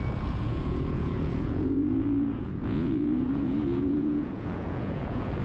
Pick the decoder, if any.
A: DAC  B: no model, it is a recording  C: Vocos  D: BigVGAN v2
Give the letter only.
C